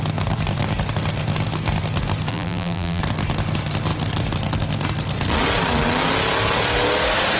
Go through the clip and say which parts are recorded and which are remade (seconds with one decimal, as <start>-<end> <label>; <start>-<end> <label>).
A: 0.0-2.3 recorded; 2.3-3.0 remade; 3.0-7.4 recorded